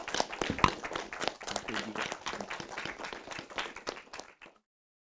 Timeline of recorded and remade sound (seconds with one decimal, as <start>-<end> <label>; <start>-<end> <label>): 0.0-5.0 recorded